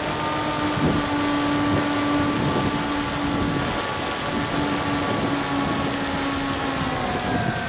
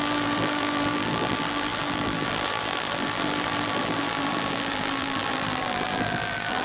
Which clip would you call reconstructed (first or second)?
second